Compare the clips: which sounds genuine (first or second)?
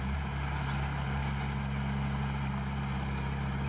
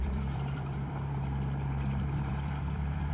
first